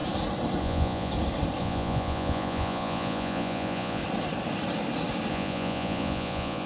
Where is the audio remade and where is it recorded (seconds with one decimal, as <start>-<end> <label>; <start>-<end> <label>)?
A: 0.0-0.6 recorded; 0.6-1.1 remade; 1.1-1.6 recorded; 1.6-4.0 remade; 4.0-5.3 recorded; 5.3-6.7 remade